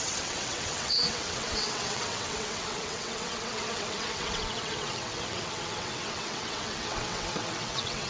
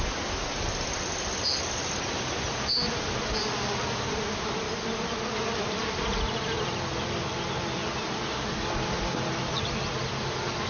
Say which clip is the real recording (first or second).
second